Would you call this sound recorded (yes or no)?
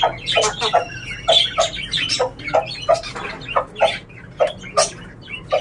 yes